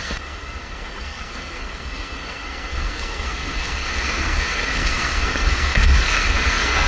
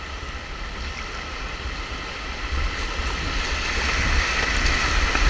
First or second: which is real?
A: second